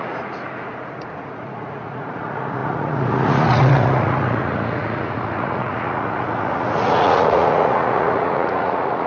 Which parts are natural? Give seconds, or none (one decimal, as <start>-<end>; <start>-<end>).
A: none